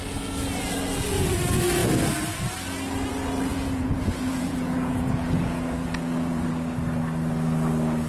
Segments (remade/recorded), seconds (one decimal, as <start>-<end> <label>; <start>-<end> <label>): 0.0-3.5 recorded; 3.5-6.5 remade; 6.5-8.1 recorded